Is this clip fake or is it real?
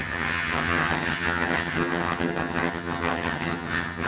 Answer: fake